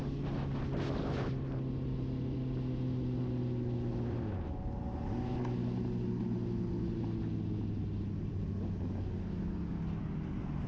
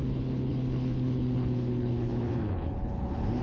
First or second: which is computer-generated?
second